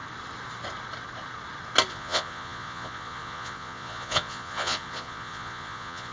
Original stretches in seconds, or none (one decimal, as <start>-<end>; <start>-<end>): 0.0-1.9